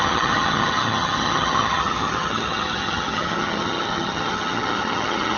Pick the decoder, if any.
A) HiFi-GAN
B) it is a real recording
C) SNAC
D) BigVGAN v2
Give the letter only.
A